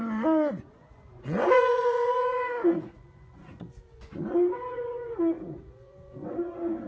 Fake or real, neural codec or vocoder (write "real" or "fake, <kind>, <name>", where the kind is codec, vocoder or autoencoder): fake, vocoder, Vocos